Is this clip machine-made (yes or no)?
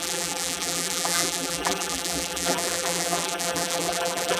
yes